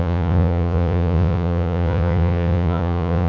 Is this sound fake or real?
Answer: fake